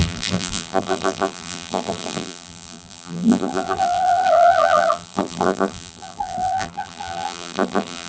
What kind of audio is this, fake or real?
fake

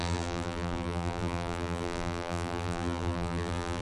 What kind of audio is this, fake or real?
fake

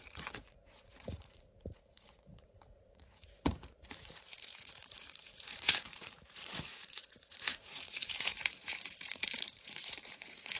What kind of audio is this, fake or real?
fake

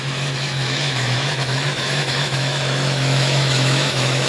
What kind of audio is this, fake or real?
fake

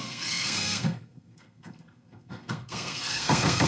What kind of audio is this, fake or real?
fake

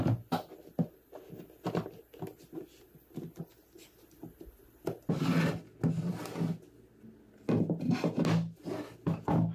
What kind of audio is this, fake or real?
real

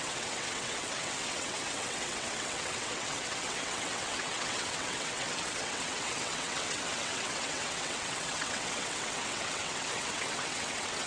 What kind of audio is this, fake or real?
fake